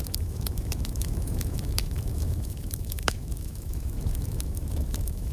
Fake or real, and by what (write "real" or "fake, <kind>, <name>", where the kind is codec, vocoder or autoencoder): fake, autoencoder, DAC-VAE